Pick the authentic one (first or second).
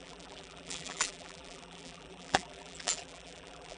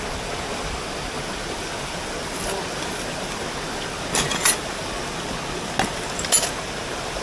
second